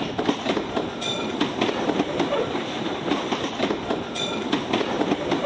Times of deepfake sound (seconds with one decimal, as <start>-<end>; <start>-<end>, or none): none